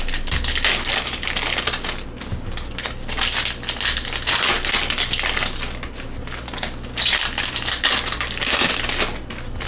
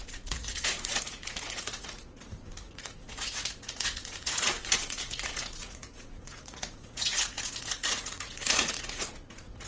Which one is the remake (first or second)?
second